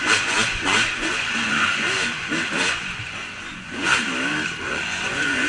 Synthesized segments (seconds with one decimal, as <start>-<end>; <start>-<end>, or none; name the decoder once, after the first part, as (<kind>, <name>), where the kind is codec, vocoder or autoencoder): 0.0-3.9 (vocoder, Vocos); 4.6-5.5